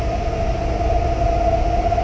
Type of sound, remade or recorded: recorded